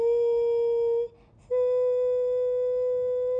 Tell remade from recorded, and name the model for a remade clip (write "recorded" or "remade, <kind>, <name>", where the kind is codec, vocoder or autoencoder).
recorded